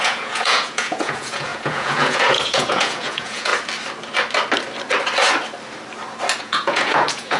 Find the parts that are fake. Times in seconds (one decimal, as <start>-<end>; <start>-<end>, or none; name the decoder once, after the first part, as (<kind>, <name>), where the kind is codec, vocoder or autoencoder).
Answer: 0.0-3.5 (vocoder, Vocos); 6.4-7.4